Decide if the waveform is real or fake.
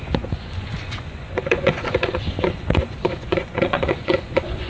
fake